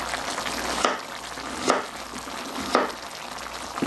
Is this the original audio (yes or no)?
yes